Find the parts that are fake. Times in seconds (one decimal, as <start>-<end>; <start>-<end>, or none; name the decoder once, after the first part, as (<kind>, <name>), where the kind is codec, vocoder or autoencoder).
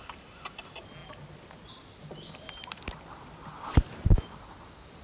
none